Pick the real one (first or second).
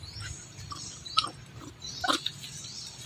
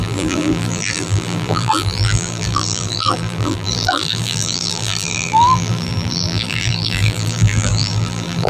first